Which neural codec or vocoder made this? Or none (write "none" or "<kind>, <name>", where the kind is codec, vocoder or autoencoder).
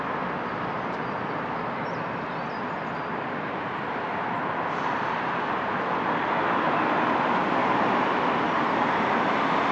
none